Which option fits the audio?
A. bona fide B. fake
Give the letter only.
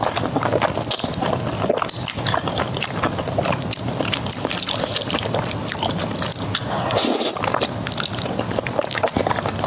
A